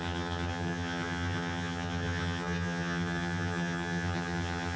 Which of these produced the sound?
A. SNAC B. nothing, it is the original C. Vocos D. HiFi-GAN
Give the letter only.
D